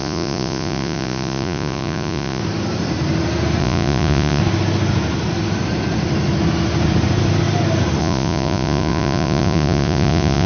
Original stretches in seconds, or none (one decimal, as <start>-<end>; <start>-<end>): 2.4-3.6; 4.4-8.0